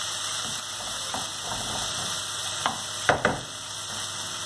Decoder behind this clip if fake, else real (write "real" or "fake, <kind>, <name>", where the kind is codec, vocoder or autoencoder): real